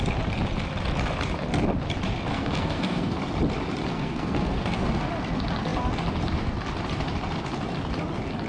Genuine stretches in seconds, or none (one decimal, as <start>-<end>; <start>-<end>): 0.0-2.3; 3.2-3.9; 5.1-8.5